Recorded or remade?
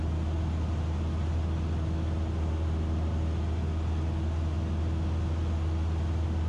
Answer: recorded